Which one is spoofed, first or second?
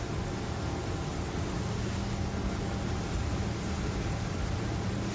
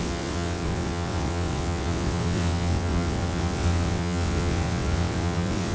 second